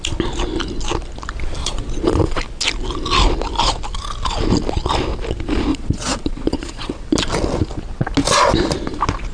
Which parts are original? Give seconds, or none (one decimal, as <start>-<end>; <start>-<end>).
0.0-1.6; 2.4-5.7; 7.0-9.3